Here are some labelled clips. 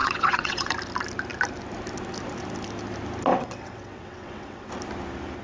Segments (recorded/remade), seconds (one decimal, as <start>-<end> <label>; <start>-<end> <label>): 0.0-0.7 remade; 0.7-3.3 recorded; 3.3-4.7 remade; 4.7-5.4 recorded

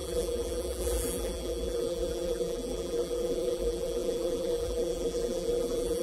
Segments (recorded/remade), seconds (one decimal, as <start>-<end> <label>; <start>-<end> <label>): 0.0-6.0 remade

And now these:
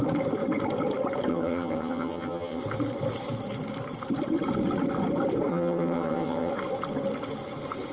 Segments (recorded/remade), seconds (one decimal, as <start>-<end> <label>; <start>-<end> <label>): 0.0-1.3 recorded; 1.3-2.6 remade; 2.6-5.5 recorded; 5.5-6.5 remade; 6.5-7.9 recorded